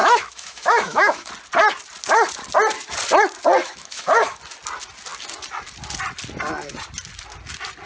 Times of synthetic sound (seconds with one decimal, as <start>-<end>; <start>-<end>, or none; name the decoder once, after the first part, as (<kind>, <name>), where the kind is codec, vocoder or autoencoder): 0.0-1.3 (autoencoder, DAC-VAE); 3.6-4.4

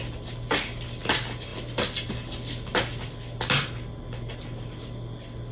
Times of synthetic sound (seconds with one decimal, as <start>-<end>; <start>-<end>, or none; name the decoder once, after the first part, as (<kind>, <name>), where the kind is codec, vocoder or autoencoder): none

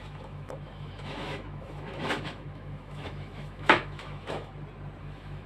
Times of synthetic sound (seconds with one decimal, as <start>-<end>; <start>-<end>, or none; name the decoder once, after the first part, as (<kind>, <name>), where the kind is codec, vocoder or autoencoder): 0.0-4.5 (autoencoder, DAC-VAE); 5.0-5.5

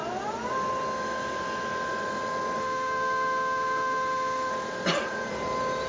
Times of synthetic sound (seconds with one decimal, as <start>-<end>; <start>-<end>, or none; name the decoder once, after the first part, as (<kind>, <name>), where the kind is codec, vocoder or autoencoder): 2.6-4.5 (autoencoder, DAC-VAE)

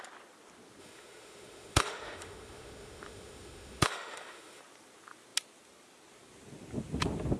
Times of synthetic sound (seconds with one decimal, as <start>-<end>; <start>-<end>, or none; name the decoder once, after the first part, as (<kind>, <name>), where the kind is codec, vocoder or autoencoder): 0.8-4.6 (autoencoder, DAC-VAE)